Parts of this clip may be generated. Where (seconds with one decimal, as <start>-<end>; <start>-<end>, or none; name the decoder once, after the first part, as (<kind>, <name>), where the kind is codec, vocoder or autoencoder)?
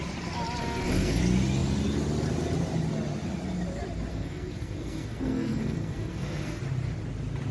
0.6-1.2 (codec, SNAC); 4.1-6.6